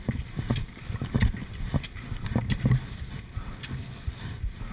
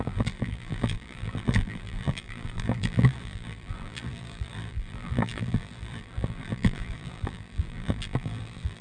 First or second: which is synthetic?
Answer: second